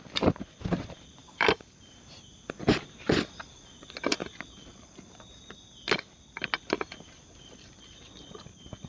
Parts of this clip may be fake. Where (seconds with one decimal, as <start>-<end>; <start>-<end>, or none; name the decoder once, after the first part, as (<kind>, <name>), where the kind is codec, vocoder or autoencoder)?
1.2-2.2 (vocoder, BigVGAN v2)